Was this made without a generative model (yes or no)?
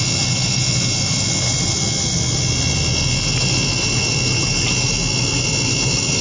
yes